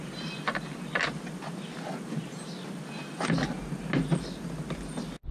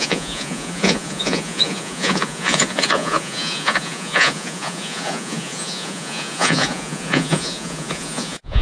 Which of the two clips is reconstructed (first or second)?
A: second